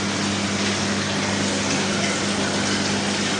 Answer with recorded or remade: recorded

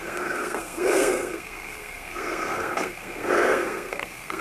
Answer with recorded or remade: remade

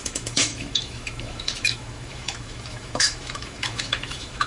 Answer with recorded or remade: remade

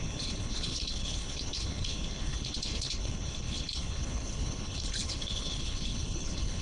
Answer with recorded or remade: remade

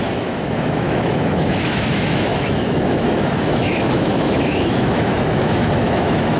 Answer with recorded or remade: remade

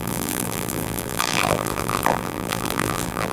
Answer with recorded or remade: remade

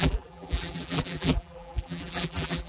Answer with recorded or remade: remade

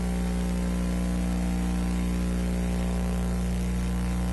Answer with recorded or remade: recorded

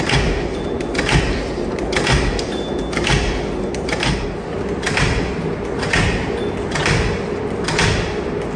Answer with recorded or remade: recorded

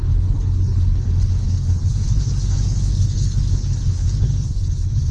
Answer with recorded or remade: remade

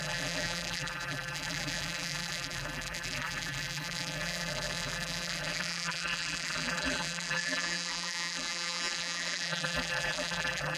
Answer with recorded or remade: remade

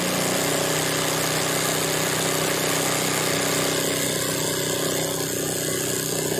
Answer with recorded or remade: recorded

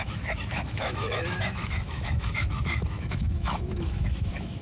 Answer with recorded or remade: remade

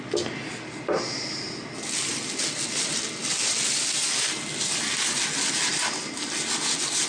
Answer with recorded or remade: recorded